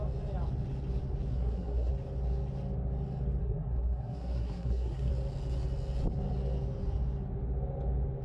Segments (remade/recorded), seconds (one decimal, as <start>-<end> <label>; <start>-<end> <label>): 0.0-1.3 recorded; 1.3-1.9 remade; 1.9-3.4 recorded; 3.4-5.1 remade; 5.1-8.2 recorded